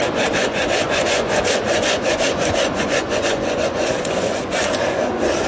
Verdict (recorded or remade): remade